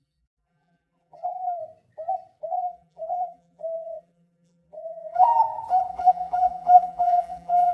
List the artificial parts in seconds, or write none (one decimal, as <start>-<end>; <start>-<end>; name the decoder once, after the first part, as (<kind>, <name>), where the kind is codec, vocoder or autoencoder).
0.0-1.6 (vocoder, BigVGAN v2); 2.4-5.3; 5.9-7.7